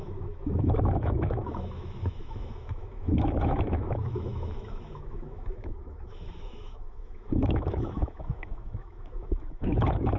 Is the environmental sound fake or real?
fake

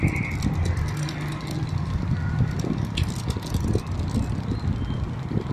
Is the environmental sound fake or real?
real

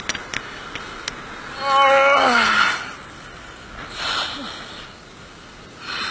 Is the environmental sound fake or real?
real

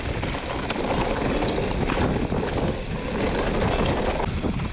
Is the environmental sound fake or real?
real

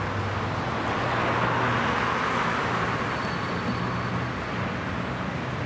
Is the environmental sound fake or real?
real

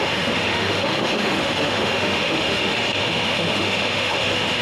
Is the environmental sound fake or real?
fake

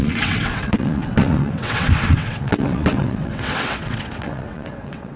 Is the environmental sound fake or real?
fake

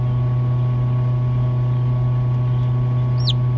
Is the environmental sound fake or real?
real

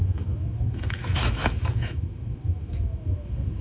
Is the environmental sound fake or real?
fake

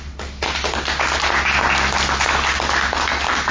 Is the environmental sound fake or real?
real